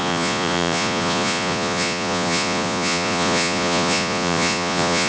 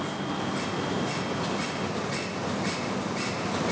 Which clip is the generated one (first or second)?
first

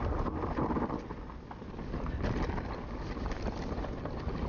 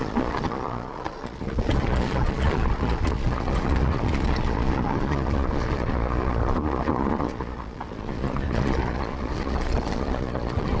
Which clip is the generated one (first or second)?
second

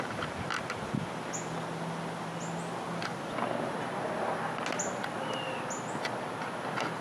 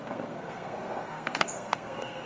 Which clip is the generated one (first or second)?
second